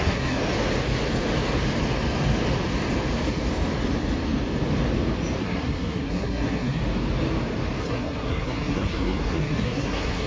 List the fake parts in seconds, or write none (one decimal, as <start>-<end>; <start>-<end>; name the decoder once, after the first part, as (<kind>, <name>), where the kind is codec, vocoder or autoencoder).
0.0-0.4 (codec, SNAC); 5.4-6.8; 7.8-10.3